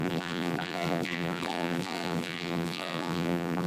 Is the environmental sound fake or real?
fake